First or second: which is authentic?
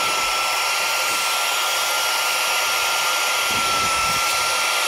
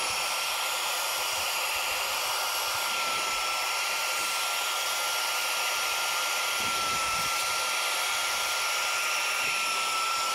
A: first